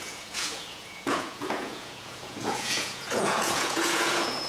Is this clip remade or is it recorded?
remade